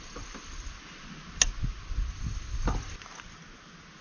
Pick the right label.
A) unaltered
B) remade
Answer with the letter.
A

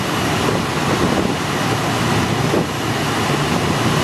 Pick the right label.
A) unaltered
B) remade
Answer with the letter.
A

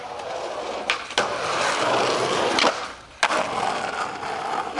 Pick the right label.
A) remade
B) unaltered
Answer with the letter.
B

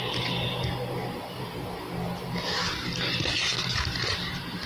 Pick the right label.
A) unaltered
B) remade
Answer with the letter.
A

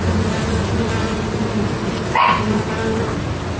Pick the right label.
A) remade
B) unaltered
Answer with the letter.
B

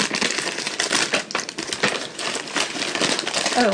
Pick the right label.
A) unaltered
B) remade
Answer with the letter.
A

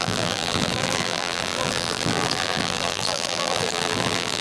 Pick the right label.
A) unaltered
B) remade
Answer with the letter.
B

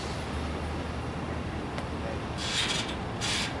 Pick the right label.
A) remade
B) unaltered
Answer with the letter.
B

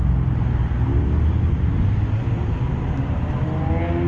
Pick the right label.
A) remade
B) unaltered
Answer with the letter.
B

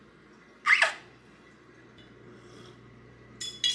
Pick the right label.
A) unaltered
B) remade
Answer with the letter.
A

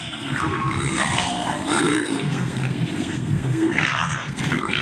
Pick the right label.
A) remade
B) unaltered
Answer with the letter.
A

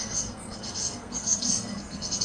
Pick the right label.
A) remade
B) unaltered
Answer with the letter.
A